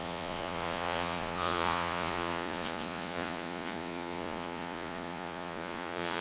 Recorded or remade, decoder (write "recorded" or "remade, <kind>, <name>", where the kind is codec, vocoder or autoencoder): remade, vocoder, Vocos